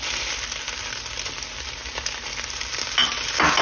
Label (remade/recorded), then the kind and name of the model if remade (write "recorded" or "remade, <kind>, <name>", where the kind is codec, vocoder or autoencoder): recorded